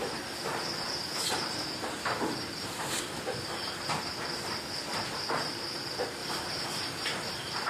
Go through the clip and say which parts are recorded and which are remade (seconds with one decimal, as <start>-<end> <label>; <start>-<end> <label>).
0.0-1.1 recorded; 1.1-4.0 remade; 4.0-6.2 recorded; 6.2-7.7 remade